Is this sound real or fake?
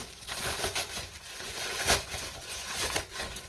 fake